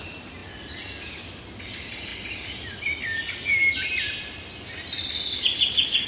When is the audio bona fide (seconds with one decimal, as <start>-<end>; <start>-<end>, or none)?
0.0-6.1